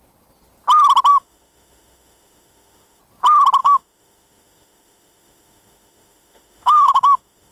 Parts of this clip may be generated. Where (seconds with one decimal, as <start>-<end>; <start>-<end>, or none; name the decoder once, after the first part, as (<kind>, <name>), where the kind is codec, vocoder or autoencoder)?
1.1-3.0 (autoencoder, DAC-VAE); 3.6-7.5